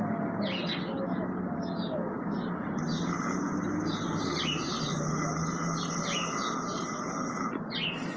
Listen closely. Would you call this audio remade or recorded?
recorded